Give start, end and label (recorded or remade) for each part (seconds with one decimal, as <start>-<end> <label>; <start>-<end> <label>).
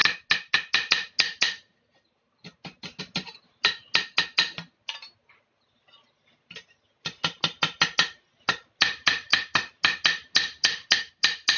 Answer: 0.0-11.6 recorded